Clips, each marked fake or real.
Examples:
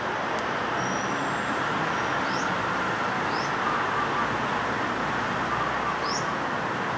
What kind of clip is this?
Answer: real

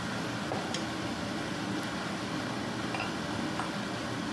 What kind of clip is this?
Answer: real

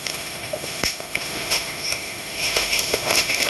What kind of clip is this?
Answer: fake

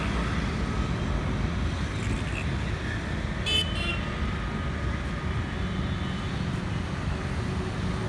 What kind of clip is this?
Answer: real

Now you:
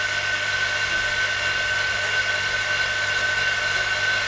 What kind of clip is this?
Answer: real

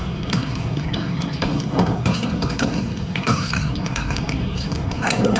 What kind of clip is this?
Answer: fake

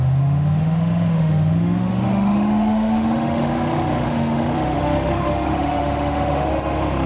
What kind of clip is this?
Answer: fake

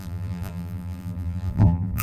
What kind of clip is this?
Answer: fake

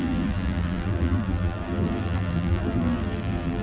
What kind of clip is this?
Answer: fake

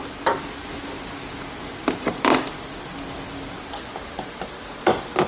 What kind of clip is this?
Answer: real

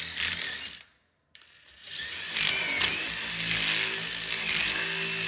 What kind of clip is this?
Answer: real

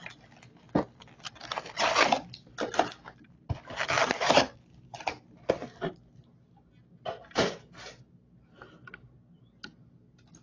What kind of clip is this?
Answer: real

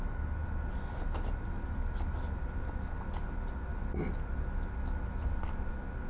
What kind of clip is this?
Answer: real